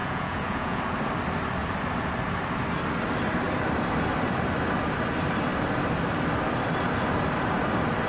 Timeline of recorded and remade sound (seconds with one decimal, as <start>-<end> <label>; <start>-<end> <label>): 0.0-0.8 remade; 0.8-8.1 recorded